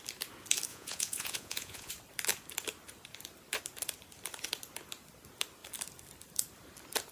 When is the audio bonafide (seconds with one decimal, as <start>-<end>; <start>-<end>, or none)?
0.0-0.7; 1.9-7.1